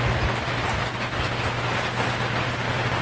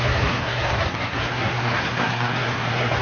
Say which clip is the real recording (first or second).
first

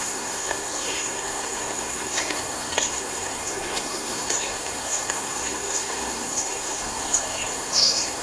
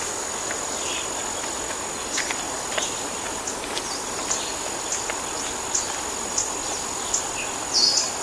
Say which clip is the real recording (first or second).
second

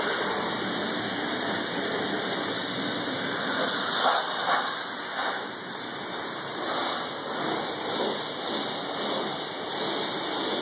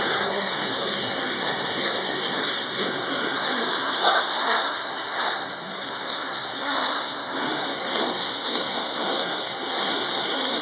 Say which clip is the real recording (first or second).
first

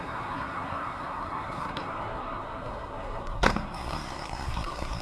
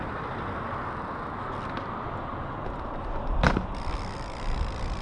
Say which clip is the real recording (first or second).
second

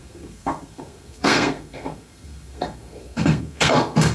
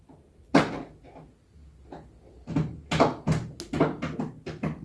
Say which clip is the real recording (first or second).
second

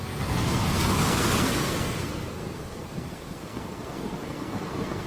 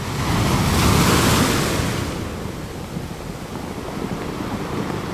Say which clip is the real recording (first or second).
second